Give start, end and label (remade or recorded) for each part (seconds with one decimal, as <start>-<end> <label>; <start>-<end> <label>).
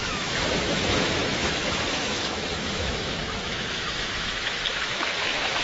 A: 0.0-5.6 remade